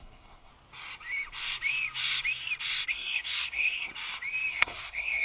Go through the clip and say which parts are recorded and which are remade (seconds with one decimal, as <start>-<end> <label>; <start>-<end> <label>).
0.0-0.5 remade; 0.5-2.9 recorded; 2.9-3.9 remade; 3.9-4.5 recorded; 4.5-5.2 remade